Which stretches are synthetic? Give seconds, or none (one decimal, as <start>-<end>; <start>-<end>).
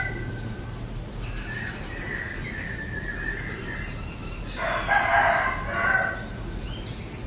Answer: none